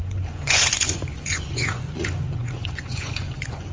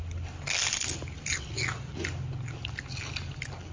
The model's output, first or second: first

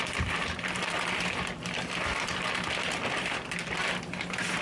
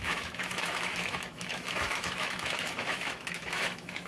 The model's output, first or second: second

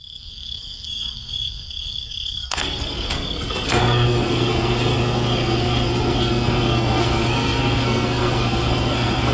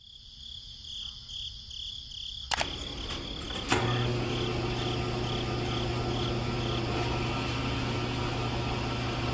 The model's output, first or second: first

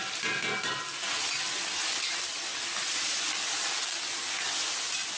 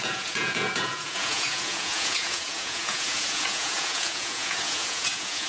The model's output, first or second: second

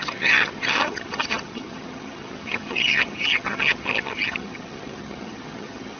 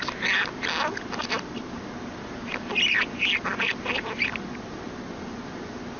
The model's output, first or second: first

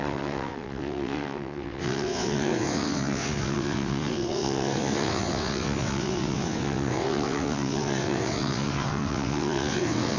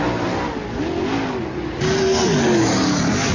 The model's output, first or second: first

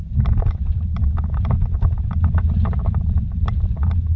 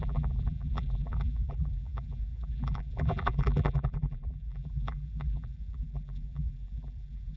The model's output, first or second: second